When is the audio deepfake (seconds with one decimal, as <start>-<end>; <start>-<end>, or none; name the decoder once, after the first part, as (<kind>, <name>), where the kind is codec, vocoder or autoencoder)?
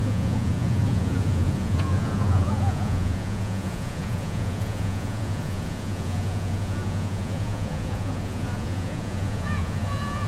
0.0-10.3 (vocoder, Vocos)